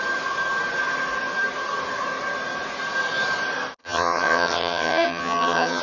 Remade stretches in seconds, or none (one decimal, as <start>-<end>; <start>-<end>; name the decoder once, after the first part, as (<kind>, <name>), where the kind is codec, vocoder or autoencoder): 3.8-5.8 (vocoder, HiFi-GAN)